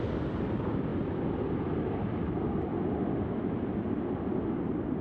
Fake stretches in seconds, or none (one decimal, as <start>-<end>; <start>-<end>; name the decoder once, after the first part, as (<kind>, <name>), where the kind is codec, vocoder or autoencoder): none